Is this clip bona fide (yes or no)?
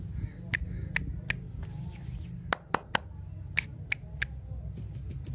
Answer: yes